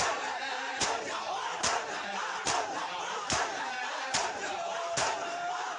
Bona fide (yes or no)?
no